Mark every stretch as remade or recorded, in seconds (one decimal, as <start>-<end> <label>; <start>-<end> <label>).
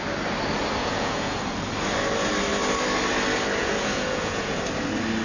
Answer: 0.0-0.8 recorded; 0.8-1.4 remade; 1.4-3.6 recorded; 3.6-4.6 remade; 4.6-5.2 recorded